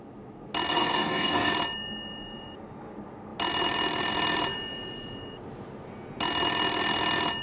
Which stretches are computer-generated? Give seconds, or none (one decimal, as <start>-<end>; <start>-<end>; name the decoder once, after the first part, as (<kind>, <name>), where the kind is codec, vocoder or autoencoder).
0.7-1.5 (codec, SNAC)